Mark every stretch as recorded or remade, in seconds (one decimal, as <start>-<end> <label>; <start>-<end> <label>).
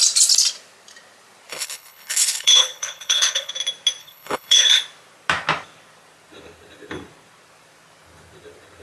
0.0-1.5 recorded; 1.5-3.5 remade; 3.5-4.0 recorded; 4.0-4.8 remade; 4.8-8.8 recorded